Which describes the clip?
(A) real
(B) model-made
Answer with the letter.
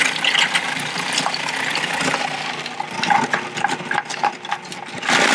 A